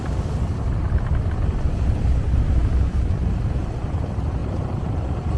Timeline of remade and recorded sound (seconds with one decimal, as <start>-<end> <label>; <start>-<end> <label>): 0.0-4.4 recorded; 4.4-5.4 remade